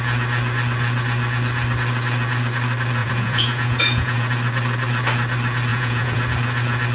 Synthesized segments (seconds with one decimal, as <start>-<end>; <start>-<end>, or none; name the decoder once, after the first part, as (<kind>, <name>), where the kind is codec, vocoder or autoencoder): 3.0-4.3 (vocoder, Vocos); 5.7-6.2

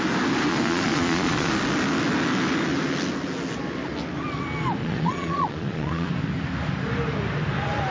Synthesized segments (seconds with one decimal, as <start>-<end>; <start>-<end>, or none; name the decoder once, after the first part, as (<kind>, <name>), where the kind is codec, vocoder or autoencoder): 0.5-1.5 (vocoder, Vocos); 4.8-6.1

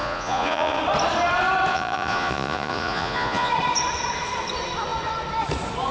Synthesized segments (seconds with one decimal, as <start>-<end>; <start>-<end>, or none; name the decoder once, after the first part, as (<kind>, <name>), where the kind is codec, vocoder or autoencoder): 0.0-0.8 (vocoder, Vocos); 1.7-3.5

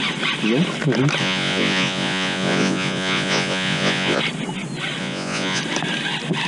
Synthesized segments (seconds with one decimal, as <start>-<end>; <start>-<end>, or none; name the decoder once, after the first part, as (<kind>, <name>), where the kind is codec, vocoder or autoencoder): 1.2-4.2 (vocoder, Vocos); 5.0-5.6

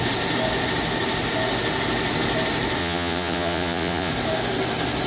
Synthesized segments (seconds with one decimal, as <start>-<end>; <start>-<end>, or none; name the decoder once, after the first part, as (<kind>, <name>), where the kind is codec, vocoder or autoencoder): 2.8-4.1 (vocoder, Vocos)

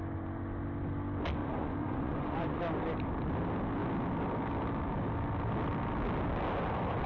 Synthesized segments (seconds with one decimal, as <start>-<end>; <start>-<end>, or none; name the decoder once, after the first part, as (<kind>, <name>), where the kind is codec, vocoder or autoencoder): 1.4-2.6 (vocoder, Vocos)